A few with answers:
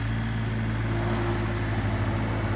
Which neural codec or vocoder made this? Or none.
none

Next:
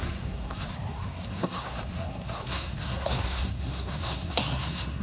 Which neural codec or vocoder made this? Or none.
codec, SNAC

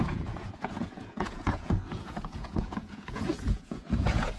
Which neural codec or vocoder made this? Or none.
vocoder, Vocos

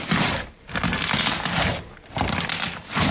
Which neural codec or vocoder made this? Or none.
none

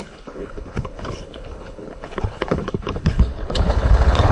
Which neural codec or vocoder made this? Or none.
codec, HILCodec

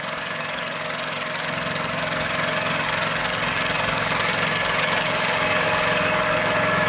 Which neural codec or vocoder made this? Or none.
codec, DAC